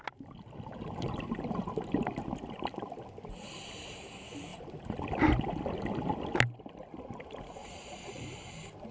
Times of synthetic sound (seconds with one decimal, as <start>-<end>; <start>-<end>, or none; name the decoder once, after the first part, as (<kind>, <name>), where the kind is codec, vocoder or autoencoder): 7.6-8.2 (vocoder, Vocos)